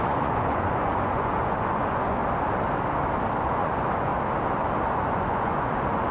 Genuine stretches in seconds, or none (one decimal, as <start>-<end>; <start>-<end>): 2.2-3.4; 4.1-4.9